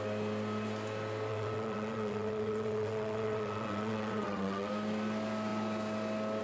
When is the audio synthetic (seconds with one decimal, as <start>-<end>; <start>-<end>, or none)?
1.3-4.7